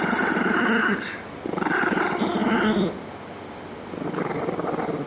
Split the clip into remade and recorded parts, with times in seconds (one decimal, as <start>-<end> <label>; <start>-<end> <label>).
0.0-5.1 recorded